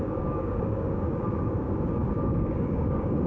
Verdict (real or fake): fake